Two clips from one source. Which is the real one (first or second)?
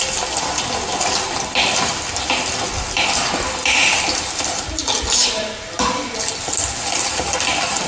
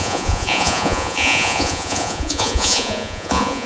first